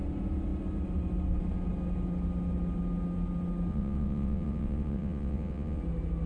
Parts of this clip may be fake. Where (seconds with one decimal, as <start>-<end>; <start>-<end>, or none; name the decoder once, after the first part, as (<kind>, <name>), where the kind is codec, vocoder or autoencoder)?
3.7-5.8 (vocoder, WaveNeXt)